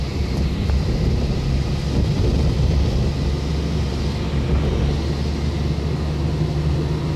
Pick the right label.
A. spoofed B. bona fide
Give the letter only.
B